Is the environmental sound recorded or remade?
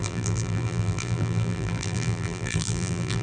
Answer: remade